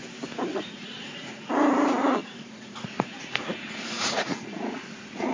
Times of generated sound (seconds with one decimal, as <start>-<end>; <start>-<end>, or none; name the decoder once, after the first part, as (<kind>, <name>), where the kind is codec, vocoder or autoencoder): 0.5-1.5 (vocoder, Vocos); 2.0-5.3